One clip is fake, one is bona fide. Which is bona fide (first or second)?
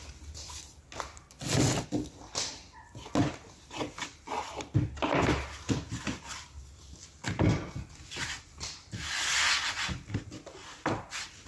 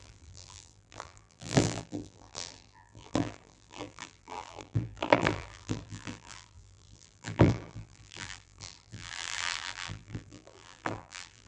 first